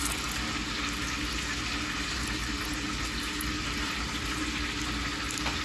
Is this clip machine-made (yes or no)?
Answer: no